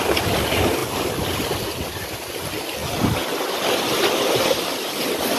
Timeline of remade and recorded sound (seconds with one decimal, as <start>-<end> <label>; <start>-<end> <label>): 0.0-5.4 recorded